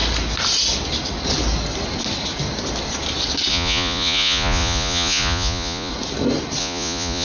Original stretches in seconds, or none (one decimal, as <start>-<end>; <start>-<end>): 0.0-3.5; 5.9-6.6